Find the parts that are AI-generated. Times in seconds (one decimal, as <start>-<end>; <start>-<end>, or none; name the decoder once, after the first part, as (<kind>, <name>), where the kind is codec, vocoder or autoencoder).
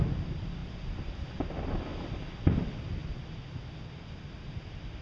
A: 0.0-0.6 (vocoder, BigVGAN v2); 1.3-1.9; 2.6-3.0